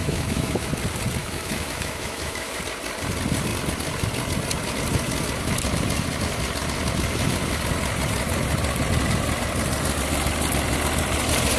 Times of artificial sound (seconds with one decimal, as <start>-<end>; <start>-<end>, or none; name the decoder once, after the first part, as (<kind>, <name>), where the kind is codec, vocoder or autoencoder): 0.0-0.7 (autoencoder, DAC-VAE); 1.2-2.6